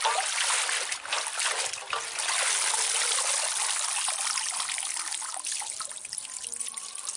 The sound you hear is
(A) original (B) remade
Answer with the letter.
A